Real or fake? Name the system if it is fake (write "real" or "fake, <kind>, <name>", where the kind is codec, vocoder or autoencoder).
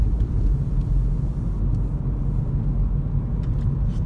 real